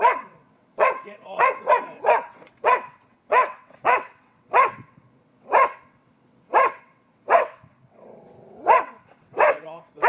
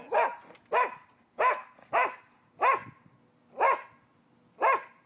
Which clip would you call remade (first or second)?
first